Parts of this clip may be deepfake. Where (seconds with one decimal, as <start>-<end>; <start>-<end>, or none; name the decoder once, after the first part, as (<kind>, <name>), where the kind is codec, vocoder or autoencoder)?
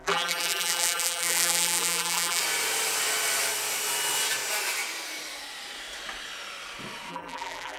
0.0-2.4 (vocoder, BigVGAN v2); 7.1-7.8